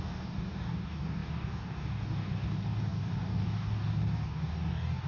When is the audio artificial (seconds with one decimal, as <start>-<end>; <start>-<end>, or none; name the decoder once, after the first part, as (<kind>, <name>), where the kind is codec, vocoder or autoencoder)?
0.0-5.1 (codec, DAC)